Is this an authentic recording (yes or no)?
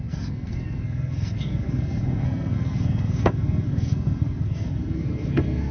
no